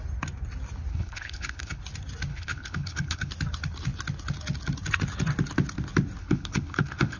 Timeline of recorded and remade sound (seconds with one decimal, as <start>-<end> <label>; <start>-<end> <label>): 0.0-0.9 recorded; 0.9-1.8 remade; 1.8-2.3 recorded; 2.3-3.3 remade; 3.3-6.2 recorded; 6.2-7.2 remade